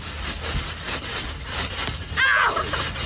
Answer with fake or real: real